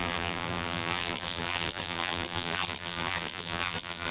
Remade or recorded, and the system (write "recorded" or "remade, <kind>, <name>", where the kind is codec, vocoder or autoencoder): remade, vocoder, BigVGAN v2